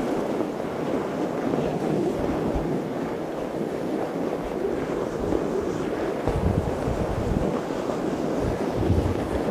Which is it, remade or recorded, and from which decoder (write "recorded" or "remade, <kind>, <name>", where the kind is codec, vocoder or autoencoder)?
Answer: recorded